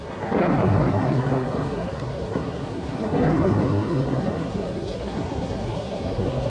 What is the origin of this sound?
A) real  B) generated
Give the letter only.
B